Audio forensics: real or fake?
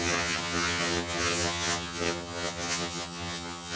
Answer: fake